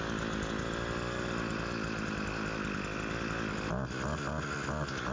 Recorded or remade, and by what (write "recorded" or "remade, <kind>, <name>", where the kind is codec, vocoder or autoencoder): recorded